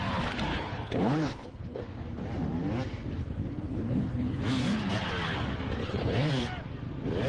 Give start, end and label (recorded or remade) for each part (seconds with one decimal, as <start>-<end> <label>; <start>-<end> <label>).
0.0-0.5 recorded; 0.5-1.8 remade; 1.8-3.2 recorded; 3.2-4.4 remade; 4.4-5.8 recorded; 5.8-6.3 remade; 6.3-7.3 recorded